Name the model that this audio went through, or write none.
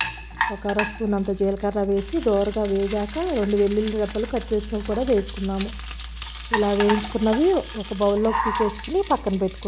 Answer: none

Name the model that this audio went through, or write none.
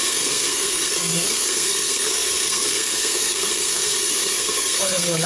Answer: codec, SNAC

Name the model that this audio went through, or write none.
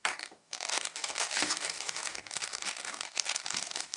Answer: codec, DAC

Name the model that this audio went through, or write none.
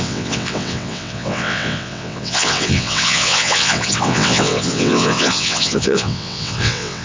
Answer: vocoder, WaveNeXt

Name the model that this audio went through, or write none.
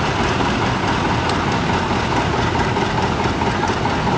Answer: none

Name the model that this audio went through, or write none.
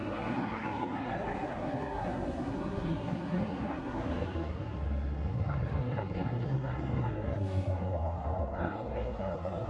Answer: codec, SNAC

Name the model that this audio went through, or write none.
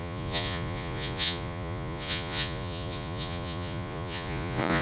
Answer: vocoder, Vocos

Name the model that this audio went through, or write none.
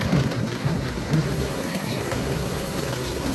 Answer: codec, SNAC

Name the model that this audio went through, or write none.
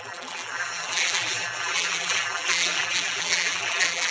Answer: vocoder, BigVGAN v2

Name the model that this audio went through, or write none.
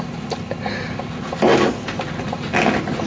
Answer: none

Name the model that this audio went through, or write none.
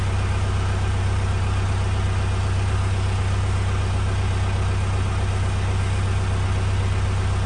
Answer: none